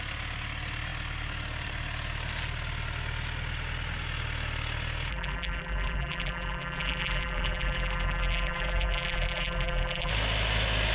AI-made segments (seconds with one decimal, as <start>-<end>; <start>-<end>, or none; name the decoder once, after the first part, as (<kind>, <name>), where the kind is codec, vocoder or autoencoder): 5.1-10.1 (vocoder, BigVGAN v2)